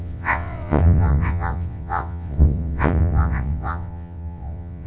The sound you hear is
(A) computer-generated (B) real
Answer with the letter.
A